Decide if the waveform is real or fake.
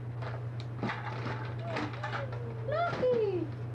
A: real